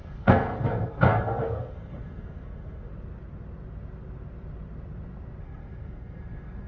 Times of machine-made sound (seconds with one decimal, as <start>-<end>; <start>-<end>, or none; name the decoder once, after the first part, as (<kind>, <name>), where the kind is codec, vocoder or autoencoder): 0.0-2.9 (codec, SNAC); 5.4-6.7